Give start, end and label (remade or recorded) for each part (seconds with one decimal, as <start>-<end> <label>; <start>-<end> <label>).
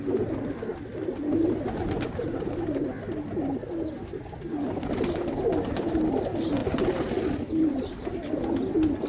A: 0.0-9.1 recorded